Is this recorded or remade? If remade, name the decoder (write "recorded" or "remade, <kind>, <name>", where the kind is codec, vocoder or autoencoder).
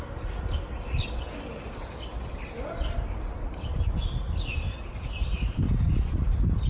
recorded